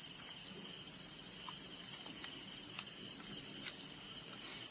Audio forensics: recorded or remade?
recorded